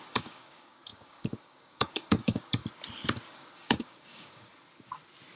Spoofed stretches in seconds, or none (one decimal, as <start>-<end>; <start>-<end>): 0.0-2.6; 3.3-4.5